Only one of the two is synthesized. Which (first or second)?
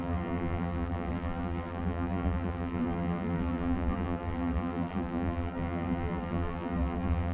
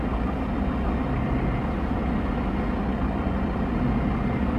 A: first